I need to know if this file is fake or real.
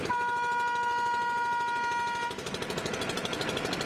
real